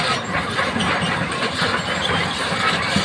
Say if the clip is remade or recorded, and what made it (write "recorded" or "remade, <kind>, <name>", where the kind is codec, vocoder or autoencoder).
remade, vocoder, BigVGAN v2